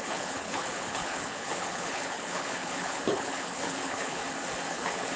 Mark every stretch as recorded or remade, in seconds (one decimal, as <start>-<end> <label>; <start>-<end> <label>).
0.0-4.2 remade; 4.2-4.7 recorded; 4.7-5.2 remade